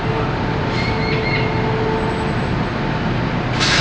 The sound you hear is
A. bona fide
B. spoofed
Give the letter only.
A